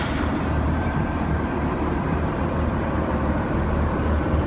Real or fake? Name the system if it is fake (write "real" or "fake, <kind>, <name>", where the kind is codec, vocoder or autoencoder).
fake, vocoder, BigVGAN v2